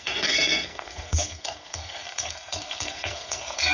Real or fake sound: fake